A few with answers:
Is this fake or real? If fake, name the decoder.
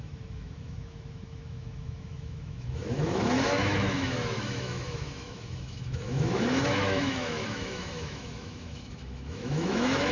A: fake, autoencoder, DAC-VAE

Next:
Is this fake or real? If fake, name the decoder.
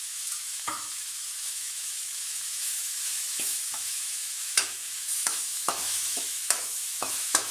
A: fake, autoencoder, DAC-VAE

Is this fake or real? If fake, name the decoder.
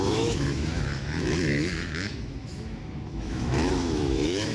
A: fake, autoencoder, DAC-VAE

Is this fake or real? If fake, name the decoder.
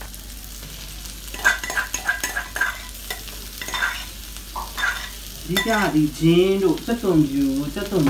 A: real